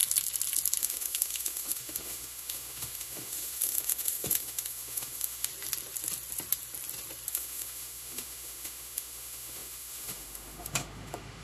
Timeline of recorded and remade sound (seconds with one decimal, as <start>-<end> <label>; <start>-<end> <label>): 0.0-0.8 recorded; 0.8-5.5 remade; 5.5-7.3 recorded; 7.3-11.4 remade